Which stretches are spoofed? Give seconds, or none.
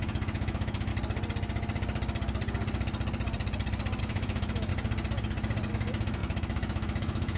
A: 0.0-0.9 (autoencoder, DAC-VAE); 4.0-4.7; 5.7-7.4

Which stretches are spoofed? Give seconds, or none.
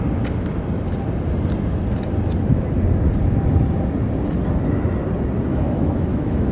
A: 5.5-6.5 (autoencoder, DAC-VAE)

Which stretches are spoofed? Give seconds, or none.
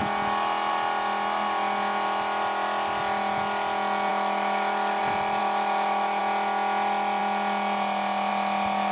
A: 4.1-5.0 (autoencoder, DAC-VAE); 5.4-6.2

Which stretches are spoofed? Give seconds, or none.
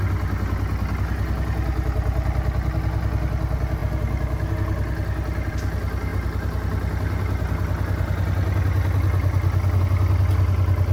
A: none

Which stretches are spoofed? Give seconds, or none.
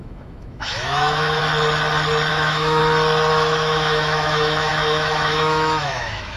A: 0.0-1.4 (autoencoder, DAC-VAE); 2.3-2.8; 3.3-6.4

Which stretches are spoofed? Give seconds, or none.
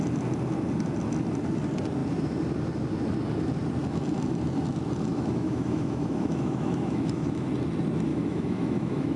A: 5.1-7.5 (autoencoder, DAC-VAE); 8.1-9.2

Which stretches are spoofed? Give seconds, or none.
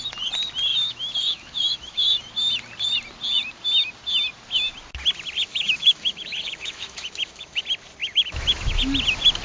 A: 0.7-2.2 (autoencoder, DAC-VAE); 5.5-7.6; 8.0-8.8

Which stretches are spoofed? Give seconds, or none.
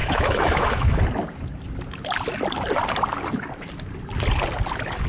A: 0.0-1.0 (autoencoder, DAC-VAE)